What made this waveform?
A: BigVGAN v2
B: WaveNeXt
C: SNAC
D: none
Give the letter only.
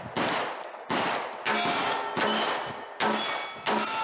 D